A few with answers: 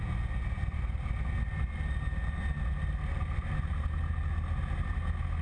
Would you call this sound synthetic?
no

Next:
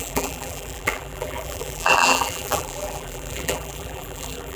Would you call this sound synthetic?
yes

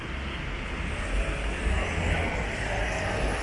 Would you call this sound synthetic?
no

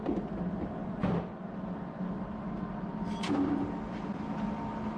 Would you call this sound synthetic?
no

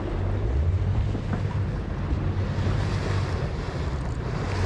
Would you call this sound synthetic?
no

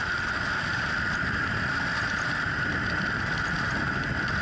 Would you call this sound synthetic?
no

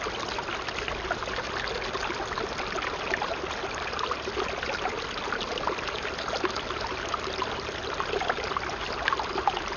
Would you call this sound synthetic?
no